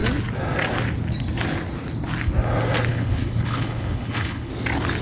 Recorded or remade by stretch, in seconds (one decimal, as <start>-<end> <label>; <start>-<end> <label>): 0.0-2.9 recorded; 2.9-4.5 remade; 4.5-5.0 recorded